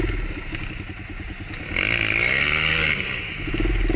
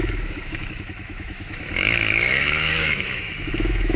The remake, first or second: second